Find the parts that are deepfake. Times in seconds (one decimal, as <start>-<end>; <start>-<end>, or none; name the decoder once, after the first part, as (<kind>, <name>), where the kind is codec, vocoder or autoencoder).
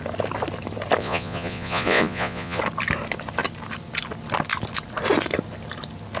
1.0-2.6 (vocoder, Vocos)